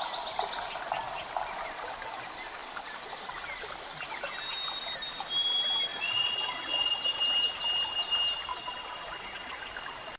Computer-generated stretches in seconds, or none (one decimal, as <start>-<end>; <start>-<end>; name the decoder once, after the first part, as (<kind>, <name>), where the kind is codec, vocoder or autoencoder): 5.9-6.9 (vocoder, Vocos); 8.5-9.6